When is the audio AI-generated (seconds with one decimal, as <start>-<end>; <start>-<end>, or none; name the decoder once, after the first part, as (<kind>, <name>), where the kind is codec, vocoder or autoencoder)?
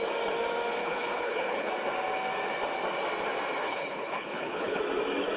0.8-1.7 (codec, HILCodec); 3.6-4.8